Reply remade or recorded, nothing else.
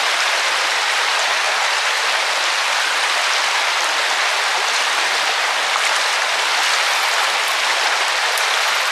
recorded